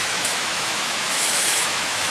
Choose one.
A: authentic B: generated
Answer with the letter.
B